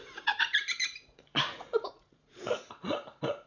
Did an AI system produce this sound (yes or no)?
yes